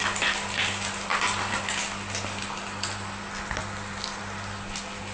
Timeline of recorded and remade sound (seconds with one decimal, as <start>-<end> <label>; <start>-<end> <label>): 0.0-5.1 recorded